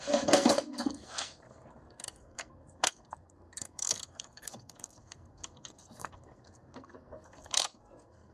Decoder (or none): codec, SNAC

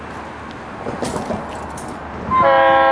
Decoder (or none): none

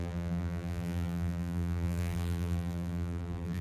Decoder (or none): vocoder, BigVGAN v2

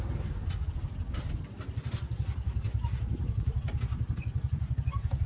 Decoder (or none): none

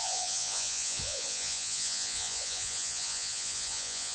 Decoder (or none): vocoder, Vocos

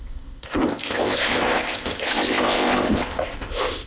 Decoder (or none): codec, ZipCodec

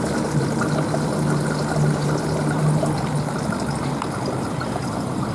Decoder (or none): none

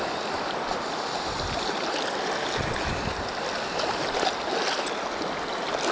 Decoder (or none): none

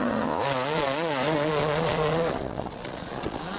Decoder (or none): vocoder, Vocos